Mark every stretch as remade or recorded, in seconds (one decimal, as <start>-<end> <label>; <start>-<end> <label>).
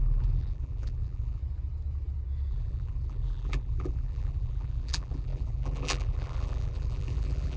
0.0-1.4 remade; 1.4-2.5 recorded; 2.5-7.6 remade